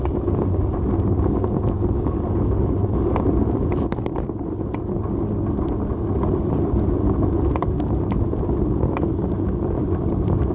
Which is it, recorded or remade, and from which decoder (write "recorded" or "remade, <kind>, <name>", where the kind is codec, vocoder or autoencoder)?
recorded